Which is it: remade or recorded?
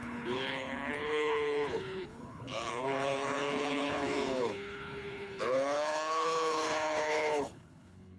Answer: remade